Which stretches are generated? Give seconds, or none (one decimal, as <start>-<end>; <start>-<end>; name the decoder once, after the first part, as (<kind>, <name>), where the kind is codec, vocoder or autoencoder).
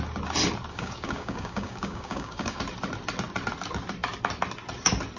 0.7-2.6 (codec, DAC)